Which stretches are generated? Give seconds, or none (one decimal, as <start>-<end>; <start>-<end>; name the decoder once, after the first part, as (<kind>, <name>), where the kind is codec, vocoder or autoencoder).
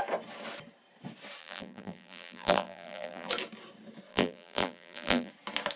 1.4-3.3 (vocoder, BigVGAN v2); 4.1-5.3